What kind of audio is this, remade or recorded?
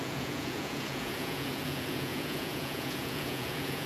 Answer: remade